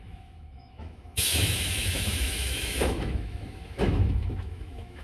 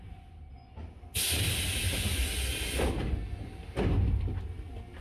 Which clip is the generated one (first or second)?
first